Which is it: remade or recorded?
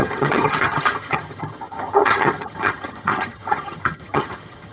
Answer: remade